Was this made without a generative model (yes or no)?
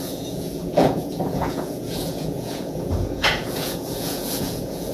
no